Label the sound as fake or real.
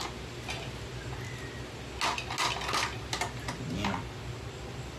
real